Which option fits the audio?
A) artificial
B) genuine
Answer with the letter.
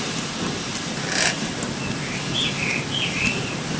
B